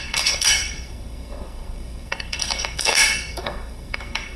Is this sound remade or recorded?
remade